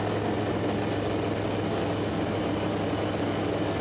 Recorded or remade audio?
recorded